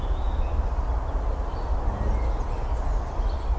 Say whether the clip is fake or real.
real